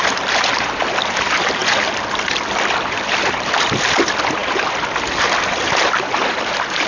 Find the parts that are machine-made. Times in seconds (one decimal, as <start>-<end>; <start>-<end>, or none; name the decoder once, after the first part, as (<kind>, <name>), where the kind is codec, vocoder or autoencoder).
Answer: 0.0-0.8 (vocoder, BigVGAN v2); 1.6-3.6